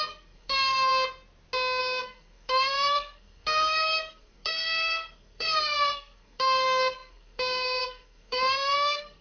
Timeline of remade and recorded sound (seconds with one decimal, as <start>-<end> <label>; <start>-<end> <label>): 0.0-0.9 remade; 0.9-1.8 recorded; 1.8-9.2 remade